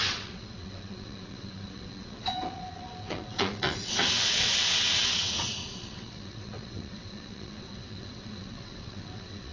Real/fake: fake